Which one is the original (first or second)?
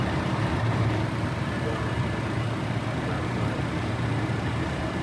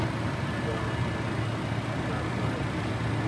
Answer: second